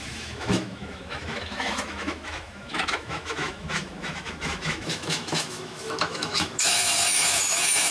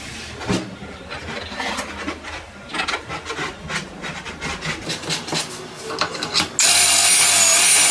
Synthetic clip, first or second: first